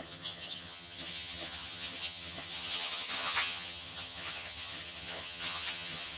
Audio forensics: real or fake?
fake